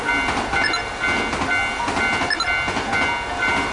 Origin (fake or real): real